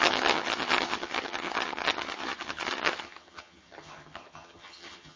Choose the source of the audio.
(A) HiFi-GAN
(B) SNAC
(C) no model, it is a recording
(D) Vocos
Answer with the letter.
A